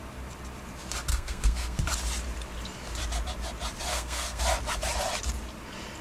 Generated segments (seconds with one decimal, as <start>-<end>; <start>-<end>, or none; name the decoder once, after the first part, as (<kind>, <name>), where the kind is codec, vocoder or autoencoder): 1.1-1.8 (codec, SNAC); 3.9-4.4